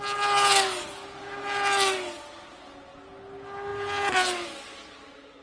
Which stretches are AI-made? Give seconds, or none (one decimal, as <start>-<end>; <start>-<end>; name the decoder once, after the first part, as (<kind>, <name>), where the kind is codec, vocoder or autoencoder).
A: none